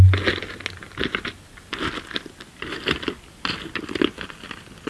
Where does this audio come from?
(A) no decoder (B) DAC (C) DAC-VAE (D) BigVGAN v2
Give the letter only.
A